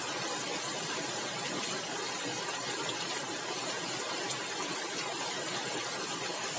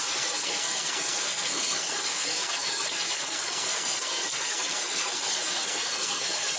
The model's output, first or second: second